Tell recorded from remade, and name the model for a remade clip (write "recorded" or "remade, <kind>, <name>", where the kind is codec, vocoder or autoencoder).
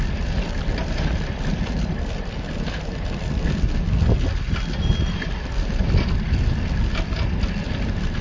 recorded